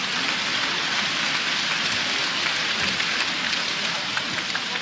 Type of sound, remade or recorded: recorded